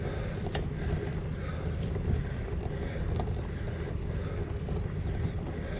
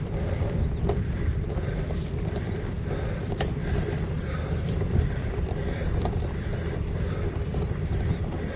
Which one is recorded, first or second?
first